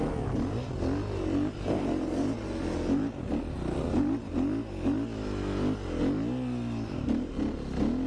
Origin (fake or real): real